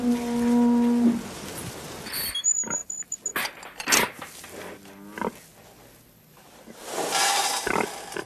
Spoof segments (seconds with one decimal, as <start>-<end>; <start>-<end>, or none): none